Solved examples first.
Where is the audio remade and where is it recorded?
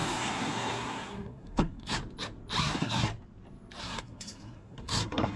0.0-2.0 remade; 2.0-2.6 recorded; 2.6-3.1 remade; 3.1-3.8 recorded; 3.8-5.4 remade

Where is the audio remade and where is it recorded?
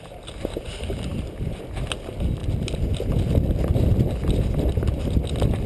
0.0-5.7 recorded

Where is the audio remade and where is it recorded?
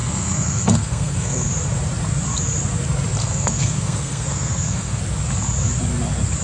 0.0-1.5 remade; 1.5-3.2 recorded; 3.2-5.0 remade; 5.0-6.4 recorded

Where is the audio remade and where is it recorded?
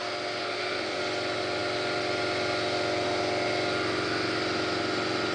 0.0-0.4 recorded; 0.4-1.0 remade; 1.0-5.3 recorded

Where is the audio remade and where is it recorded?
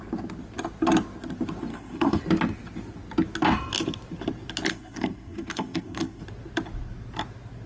0.0-1.7 recorded; 1.7-2.2 remade; 2.2-4.7 recorded; 4.7-6.2 remade; 6.2-7.7 recorded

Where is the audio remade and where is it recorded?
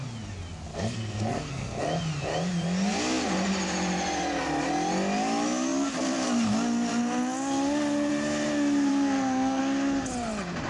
0.0-0.7 recorded; 0.7-1.8 remade; 1.8-8.9 recorded; 8.9-9.6 remade; 9.6-10.7 recorded